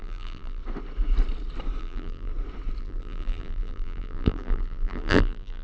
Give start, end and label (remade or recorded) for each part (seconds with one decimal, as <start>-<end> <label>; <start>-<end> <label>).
0.0-0.6 remade; 0.6-1.8 recorded; 1.8-2.3 remade; 2.3-2.8 recorded; 2.8-5.6 remade